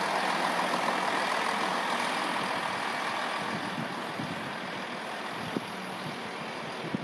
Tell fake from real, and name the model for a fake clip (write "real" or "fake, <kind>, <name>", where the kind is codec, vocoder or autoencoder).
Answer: real